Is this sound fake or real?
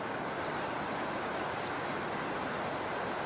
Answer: real